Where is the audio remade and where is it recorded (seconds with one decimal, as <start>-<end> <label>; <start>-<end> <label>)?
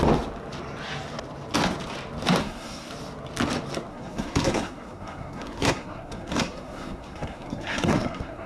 0.0-2.4 recorded; 2.4-2.9 remade; 2.9-3.9 recorded; 3.9-8.5 remade